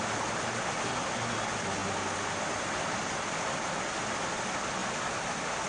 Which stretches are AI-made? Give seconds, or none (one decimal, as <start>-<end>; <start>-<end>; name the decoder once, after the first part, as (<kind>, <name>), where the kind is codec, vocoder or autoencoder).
none